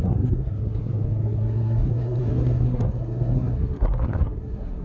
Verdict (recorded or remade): remade